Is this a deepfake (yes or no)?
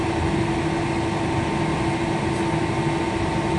no